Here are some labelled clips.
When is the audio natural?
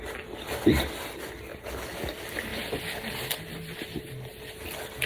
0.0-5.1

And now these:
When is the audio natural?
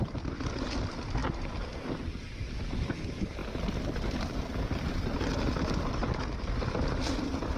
0.0-7.6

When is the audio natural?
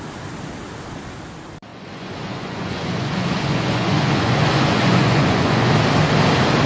0.0-1.7; 5.7-6.7